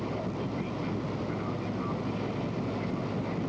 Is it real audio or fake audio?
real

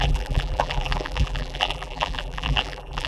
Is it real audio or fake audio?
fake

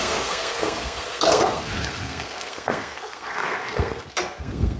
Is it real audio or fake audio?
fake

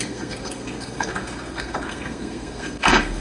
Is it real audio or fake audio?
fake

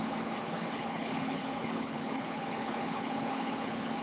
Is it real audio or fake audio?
fake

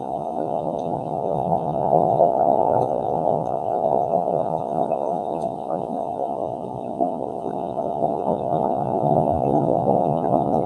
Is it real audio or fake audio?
fake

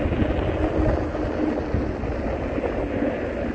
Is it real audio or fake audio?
real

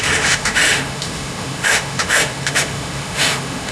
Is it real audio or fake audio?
fake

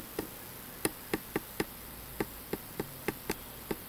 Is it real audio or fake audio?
real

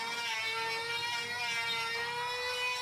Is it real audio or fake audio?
real